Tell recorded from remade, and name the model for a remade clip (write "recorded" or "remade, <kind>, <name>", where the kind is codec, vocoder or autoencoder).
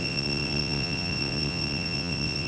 remade, vocoder, WaveNeXt